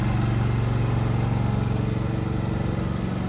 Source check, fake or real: real